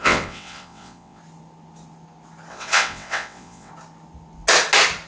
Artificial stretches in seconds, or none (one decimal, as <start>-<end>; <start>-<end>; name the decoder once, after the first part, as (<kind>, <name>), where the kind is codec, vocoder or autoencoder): 0.0-1.2 (vocoder, WaveNeXt); 2.5-3.7